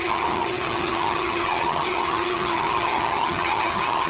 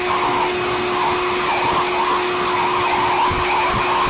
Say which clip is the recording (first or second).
second